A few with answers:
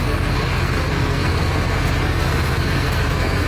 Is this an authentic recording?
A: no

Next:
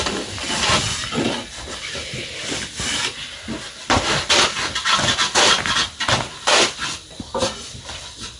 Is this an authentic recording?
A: yes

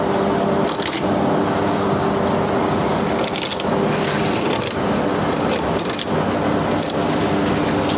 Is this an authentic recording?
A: yes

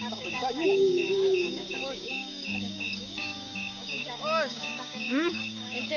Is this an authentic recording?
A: no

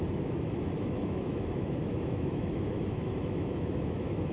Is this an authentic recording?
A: no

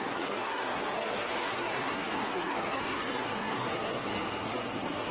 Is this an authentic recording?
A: no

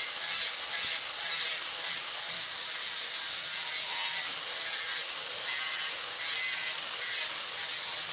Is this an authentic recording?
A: yes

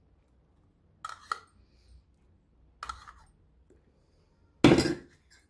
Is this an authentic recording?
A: yes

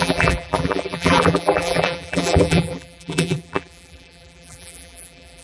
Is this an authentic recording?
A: no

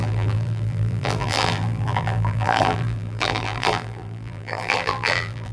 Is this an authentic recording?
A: no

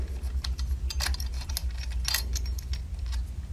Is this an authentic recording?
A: yes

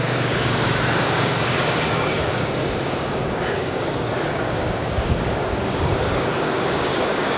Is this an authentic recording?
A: no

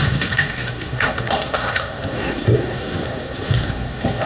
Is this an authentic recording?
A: no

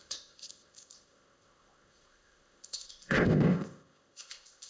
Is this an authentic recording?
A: no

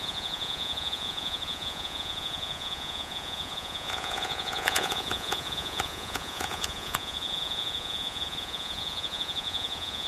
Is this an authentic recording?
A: no